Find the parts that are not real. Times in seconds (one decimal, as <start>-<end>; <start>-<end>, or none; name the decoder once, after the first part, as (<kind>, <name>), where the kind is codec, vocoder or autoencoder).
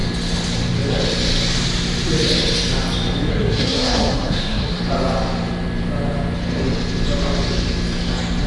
3.3-4.8 (codec, SNAC)